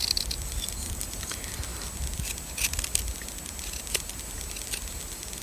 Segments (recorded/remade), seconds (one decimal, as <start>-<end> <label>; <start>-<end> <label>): 0.0-5.4 recorded